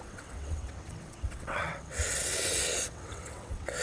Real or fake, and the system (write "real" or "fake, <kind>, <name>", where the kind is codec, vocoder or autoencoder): fake, vocoder, WaveNeXt